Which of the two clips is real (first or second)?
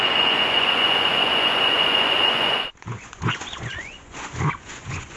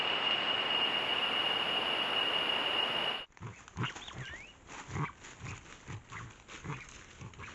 second